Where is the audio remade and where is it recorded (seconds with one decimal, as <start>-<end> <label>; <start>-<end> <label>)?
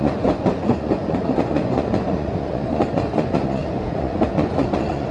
0.0-5.1 remade